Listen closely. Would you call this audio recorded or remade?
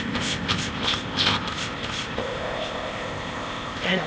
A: remade